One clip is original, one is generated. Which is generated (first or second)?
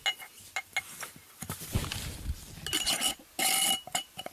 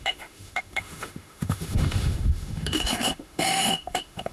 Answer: second